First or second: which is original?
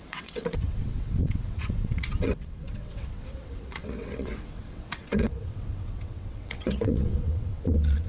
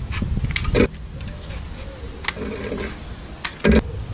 second